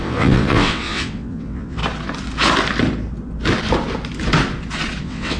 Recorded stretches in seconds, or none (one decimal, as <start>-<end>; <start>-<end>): 1.8-5.0